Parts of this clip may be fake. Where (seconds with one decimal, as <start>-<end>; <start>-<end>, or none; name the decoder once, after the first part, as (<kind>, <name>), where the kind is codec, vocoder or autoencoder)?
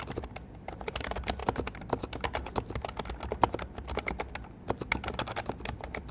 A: none